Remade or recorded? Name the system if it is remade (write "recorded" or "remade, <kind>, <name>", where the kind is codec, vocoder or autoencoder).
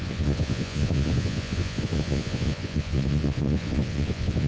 remade, vocoder, Vocos